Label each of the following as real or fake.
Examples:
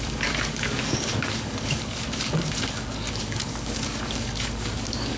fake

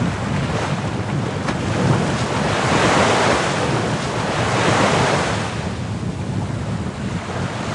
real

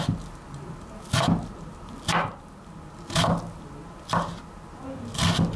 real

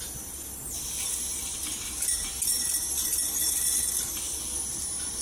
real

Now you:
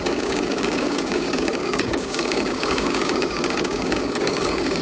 fake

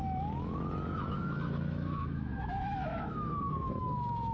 fake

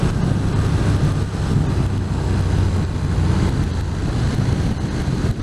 real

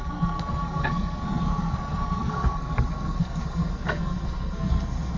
fake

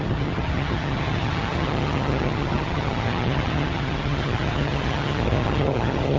fake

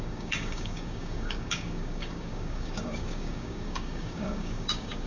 fake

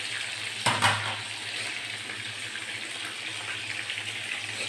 real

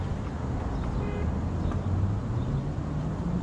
real